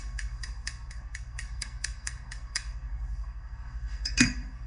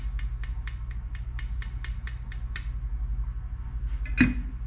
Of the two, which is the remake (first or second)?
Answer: first